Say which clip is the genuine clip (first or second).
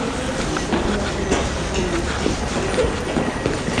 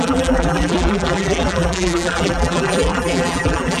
first